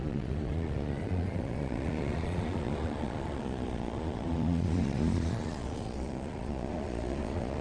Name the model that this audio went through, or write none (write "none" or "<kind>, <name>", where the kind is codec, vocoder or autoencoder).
vocoder, Vocos